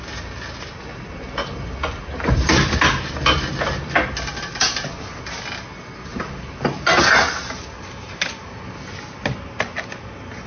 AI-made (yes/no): no